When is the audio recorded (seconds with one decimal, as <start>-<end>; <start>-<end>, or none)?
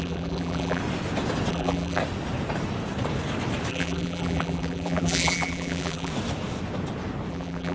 0.8-1.5; 2.0-3.7; 6.1-7.3